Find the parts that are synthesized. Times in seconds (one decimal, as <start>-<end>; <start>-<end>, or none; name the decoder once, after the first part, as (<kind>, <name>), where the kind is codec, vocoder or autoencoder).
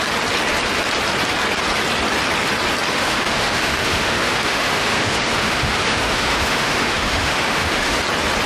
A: 2.9-8.0 (autoencoder, DAC-VAE)